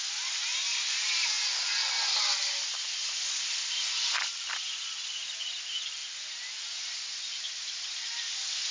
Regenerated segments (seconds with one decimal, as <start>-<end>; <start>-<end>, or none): none